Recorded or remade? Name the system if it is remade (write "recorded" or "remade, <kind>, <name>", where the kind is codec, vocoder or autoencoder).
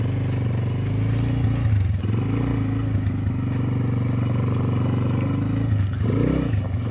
recorded